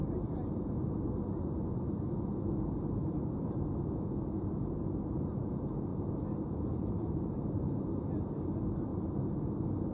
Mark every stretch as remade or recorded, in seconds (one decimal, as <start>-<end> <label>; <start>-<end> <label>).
0.0-5.9 recorded; 5.9-7.8 remade; 7.8-8.9 recorded; 8.9-9.4 remade; 9.4-9.9 recorded